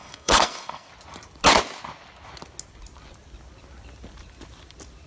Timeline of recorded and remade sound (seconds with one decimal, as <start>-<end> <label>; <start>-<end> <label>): 0.0-0.9 remade; 0.9-5.1 recorded